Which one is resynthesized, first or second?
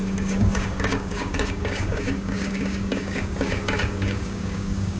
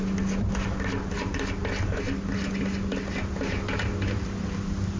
first